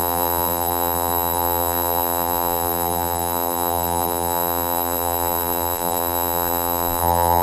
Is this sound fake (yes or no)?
yes